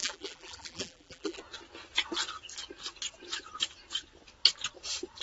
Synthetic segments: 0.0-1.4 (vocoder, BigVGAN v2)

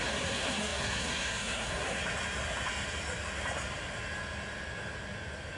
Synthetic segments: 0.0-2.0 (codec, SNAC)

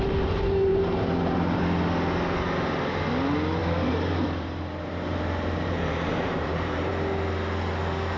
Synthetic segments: 0.7-1.6 (vocoder, BigVGAN v2); 3.6-6.9

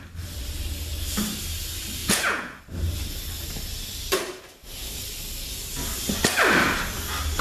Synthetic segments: 2.0-2.6 (vocoder, Vocos)

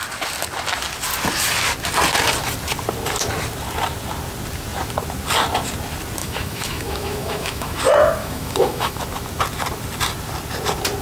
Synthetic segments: 6.2-7.8 (autoencoder, DAC-VAE); 8.2-9.0

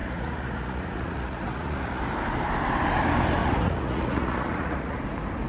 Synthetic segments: 0.0-2.0 (vocoder, Vocos); 3.4-5.0